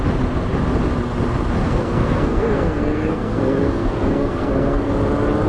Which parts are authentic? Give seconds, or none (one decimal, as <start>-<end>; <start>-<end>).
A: 0.0-1.6; 4.9-5.5